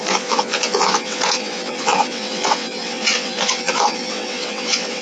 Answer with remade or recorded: remade